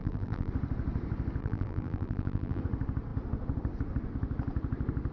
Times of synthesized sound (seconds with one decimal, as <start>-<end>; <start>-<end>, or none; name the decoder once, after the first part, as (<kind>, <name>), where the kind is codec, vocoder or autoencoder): 0.0-0.5 (vocoder, BigVGAN v2); 1.4-2.6